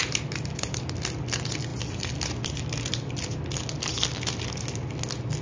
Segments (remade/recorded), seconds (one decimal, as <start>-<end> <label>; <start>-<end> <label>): 0.0-5.4 recorded